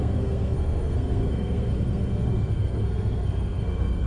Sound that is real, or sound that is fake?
fake